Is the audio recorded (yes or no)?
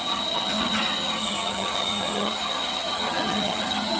no